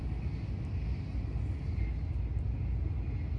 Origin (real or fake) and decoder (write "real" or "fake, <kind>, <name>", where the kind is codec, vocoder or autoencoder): real